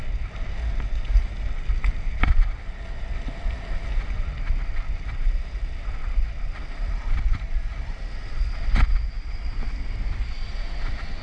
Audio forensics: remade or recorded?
recorded